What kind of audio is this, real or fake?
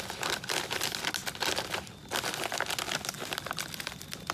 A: real